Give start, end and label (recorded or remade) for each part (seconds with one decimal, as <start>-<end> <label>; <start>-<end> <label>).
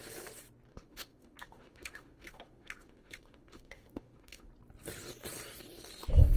0.0-0.7 recorded; 0.7-4.5 remade; 4.5-6.4 recorded